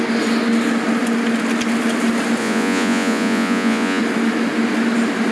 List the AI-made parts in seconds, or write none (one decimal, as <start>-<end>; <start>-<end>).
2.4-4.0